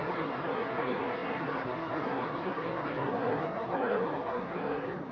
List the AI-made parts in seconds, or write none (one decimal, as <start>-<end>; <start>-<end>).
0.0-5.1